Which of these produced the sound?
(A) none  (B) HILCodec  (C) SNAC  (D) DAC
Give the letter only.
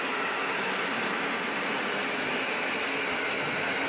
A